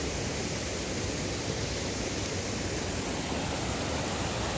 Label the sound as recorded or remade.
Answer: recorded